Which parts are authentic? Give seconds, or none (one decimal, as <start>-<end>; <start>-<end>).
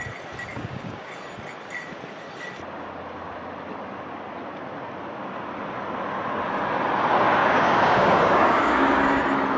0.0-0.5; 1.1-7.4; 9.2-9.6